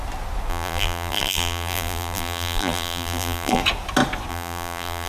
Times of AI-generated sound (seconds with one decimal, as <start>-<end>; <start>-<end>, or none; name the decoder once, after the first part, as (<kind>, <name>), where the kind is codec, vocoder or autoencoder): 0.5-3.6 (vocoder, BigVGAN v2); 4.3-5.1

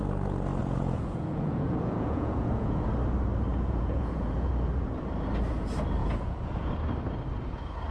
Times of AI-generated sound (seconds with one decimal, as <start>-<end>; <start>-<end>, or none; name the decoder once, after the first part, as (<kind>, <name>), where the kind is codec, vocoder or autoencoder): 0.6-2.9 (vocoder, Vocos); 3.5-4.5; 6.0-6.7

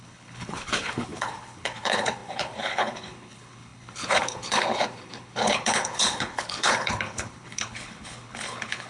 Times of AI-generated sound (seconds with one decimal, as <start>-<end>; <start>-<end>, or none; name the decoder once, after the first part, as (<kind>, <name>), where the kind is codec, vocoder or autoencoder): 0.0-8.9 (codec, HILCodec)

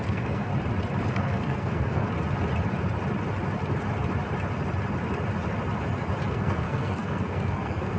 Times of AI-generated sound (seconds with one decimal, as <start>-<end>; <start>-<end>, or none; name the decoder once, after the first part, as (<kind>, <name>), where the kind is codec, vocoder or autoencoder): 0.0-0.5 (codec, SNAC); 1.1-2.0; 6.3-8.0

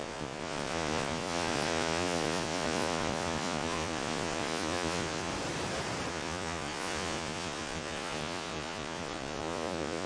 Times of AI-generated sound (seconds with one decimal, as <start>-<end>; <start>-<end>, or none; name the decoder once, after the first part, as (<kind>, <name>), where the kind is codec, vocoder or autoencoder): 0.0-5.3 (vocoder, Vocos); 6.1-10.1

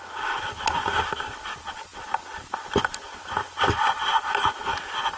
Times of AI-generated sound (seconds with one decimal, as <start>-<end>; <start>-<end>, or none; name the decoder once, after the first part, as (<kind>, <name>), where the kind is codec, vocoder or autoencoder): none

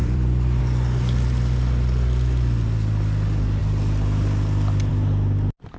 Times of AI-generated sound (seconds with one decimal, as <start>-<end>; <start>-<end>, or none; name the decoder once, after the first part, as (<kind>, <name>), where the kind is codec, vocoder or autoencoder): 0.0-0.6 (vocoder, BigVGAN v2)